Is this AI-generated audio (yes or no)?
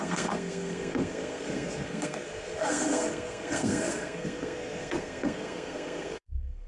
yes